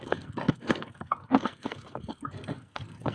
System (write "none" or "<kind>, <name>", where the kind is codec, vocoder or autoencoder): codec, SNAC